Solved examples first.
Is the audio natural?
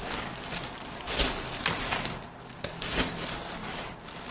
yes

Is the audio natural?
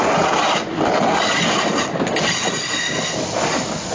yes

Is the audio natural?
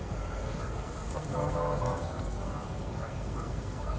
no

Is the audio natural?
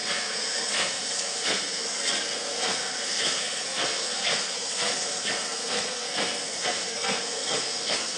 no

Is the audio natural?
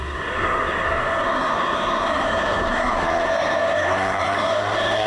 no